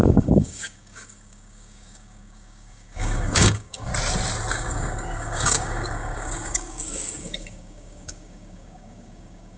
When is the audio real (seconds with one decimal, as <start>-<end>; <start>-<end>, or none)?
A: 3.9-4.5